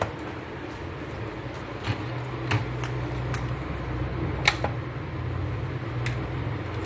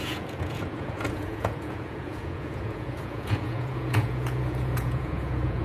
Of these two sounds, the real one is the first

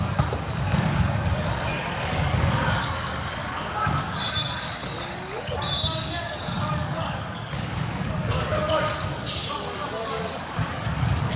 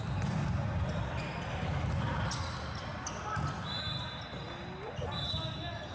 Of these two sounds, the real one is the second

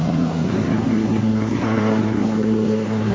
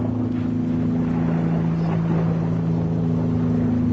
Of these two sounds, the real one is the second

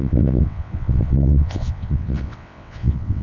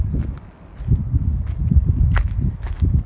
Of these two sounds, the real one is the second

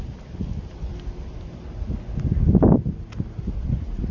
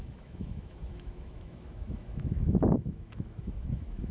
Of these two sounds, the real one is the first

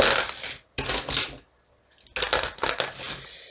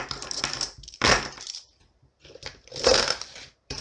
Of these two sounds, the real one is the first